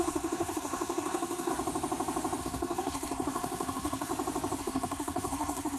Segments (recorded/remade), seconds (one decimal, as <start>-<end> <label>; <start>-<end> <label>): 0.0-1.5 remade; 1.5-2.4 recorded; 2.4-4.1 remade; 4.1-4.6 recorded; 4.6-5.8 remade